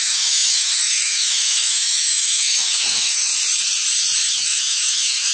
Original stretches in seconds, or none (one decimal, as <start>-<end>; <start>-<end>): 3.3-4.3